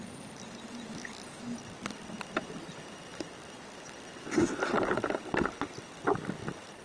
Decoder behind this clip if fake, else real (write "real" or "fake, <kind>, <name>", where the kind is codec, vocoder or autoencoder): real